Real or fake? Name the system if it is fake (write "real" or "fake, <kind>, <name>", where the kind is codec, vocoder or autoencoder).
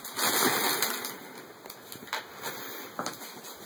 real